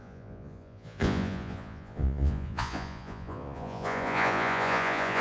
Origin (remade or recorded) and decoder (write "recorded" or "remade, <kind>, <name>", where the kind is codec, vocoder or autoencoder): remade, vocoder, Vocos